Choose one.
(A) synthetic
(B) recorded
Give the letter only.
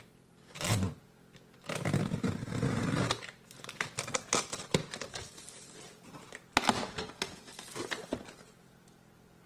B